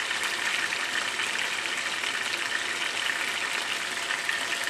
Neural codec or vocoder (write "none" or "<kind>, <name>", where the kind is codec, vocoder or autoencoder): none